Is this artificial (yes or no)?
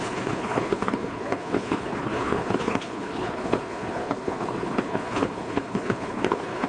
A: yes